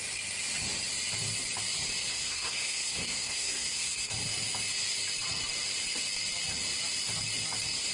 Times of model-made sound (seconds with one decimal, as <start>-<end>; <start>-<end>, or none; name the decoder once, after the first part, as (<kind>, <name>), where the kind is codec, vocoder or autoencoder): 2.1-4.1 (codec, SNAC)